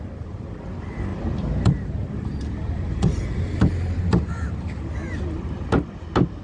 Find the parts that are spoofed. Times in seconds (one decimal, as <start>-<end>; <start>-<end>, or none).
1.1-4.9